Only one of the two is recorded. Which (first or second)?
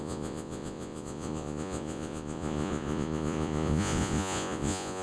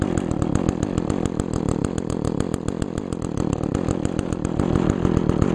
second